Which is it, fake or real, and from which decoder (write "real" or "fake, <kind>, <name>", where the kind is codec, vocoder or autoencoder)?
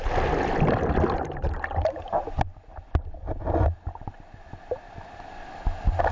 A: real